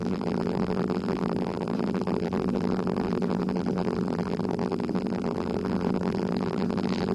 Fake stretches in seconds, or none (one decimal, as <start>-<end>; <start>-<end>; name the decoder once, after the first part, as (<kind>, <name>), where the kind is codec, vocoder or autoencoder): 0.0-7.1 (vocoder, BigVGAN v2)